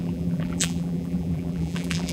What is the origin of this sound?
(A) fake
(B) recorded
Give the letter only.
A